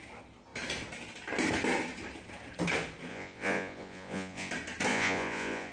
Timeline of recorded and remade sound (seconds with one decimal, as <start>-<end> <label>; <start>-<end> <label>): 0.0-3.1 recorded; 3.1-4.5 remade; 4.5-4.9 recorded; 4.9-5.7 remade